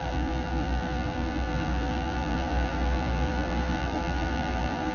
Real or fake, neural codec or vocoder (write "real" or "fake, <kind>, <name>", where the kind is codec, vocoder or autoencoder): fake, vocoder, BigVGAN v2